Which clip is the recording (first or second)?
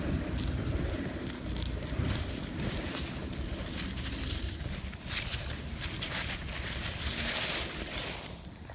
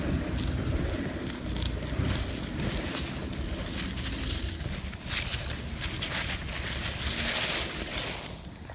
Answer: second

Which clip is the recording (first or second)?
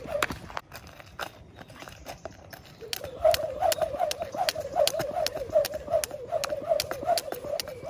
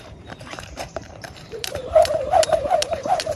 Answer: first